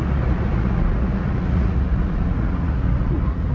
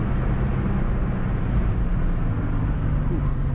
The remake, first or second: first